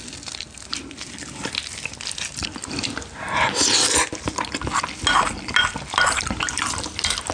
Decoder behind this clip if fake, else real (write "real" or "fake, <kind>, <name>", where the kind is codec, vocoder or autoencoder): real